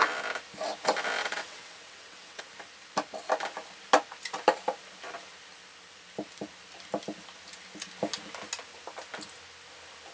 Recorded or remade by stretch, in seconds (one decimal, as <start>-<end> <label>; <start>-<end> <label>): 0.0-1.2 recorded; 1.2-2.4 remade; 2.4-10.1 recorded